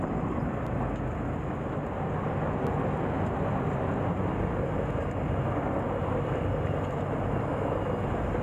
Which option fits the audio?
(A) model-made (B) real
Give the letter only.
B